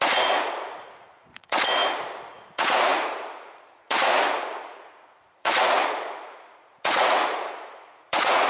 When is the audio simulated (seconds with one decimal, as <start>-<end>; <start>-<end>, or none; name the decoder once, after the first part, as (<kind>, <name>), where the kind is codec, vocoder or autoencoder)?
0.0-1.8 (vocoder, Vocos); 2.3-8.5